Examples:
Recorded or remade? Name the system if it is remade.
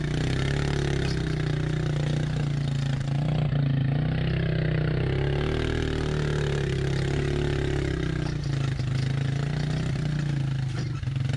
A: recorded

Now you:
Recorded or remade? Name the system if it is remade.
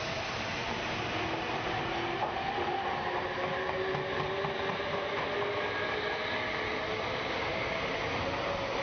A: recorded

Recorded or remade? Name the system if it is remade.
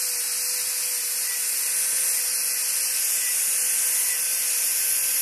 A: recorded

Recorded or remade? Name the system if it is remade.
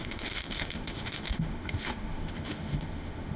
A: remade, autoencoder, DAC-VAE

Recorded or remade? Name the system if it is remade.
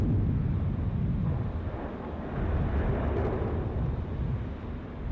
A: recorded